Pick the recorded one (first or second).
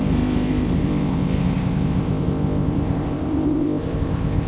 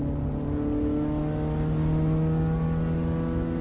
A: second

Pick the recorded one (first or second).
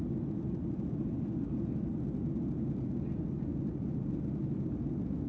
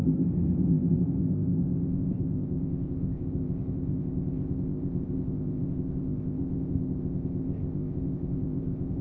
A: first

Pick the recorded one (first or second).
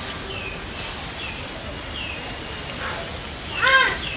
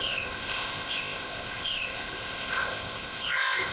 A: first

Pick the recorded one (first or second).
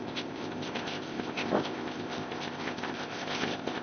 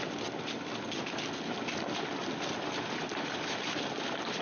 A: second